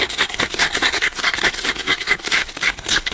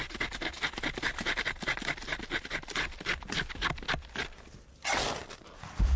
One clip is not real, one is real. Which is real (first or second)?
second